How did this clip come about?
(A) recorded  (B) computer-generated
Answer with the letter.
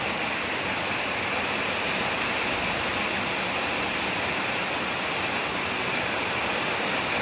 B